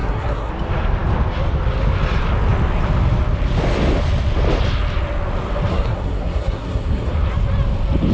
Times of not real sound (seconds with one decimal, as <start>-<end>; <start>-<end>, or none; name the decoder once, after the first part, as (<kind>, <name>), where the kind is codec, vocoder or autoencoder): 0.0-0.5 (codec, SNAC); 5.7-7.1